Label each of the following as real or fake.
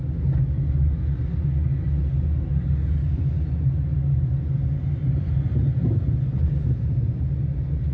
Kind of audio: real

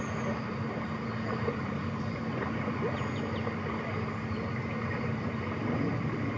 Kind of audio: real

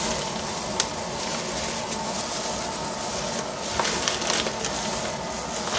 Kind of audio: real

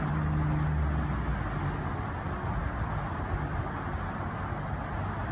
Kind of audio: real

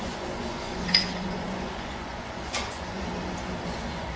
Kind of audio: fake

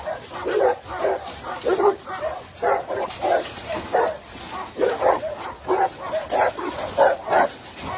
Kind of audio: real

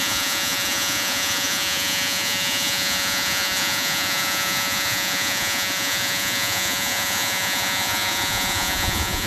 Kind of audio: fake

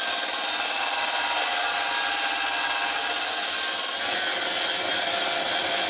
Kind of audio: real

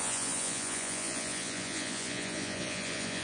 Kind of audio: fake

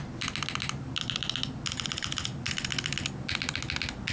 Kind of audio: real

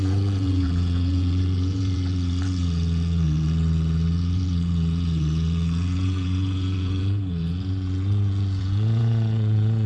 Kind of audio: fake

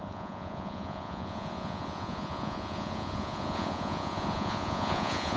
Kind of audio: fake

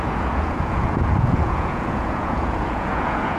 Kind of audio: fake